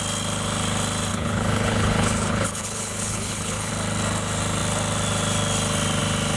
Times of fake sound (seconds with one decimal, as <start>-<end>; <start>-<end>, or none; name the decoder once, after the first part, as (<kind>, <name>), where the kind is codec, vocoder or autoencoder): 1.1-3.7 (codec, HILCodec)